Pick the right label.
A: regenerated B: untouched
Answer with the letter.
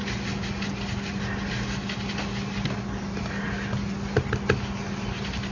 B